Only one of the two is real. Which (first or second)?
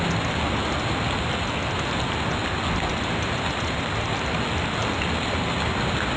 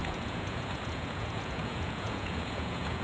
first